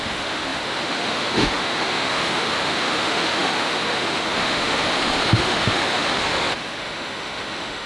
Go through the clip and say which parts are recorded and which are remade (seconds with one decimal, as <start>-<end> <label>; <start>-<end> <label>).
0.0-7.9 remade